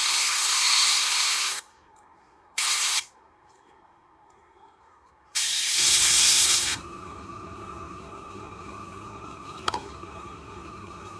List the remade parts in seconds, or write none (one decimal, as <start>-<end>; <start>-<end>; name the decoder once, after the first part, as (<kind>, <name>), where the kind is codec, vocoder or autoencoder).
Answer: 0.0-11.2 (codec, SNAC)